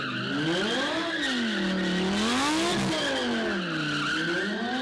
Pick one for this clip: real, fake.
real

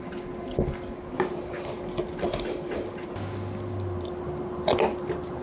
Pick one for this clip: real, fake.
real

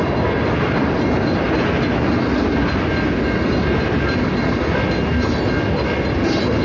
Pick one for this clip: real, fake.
real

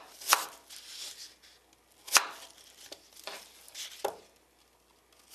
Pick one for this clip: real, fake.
real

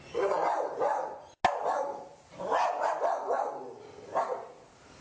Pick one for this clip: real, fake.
real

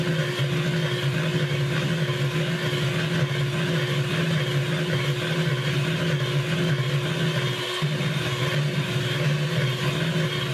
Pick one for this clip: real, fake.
real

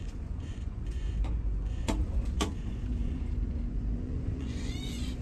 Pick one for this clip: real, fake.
fake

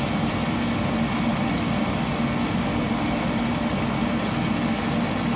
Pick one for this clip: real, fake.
real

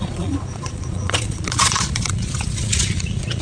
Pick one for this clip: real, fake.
fake